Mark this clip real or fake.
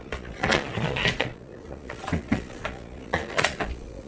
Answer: fake